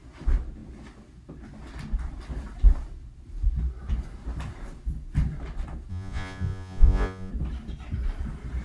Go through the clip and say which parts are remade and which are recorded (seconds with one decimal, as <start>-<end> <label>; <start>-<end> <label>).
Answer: 0.0-5.9 recorded; 5.9-7.3 remade; 7.3-8.6 recorded